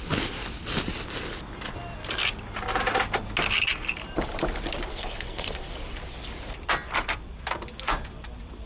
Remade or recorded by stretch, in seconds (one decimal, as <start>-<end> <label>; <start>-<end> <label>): 0.0-4.9 recorded; 4.9-5.7 remade; 5.7-8.7 recorded